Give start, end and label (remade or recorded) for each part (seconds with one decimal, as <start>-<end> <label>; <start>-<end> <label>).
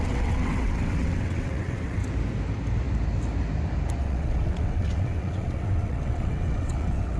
0.0-2.0 remade; 2.0-4.0 recorded; 4.0-7.2 remade